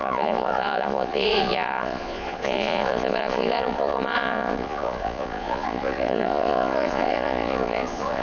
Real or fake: fake